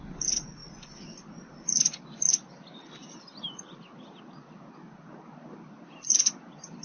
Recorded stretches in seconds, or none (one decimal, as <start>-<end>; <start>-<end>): 0.0-6.8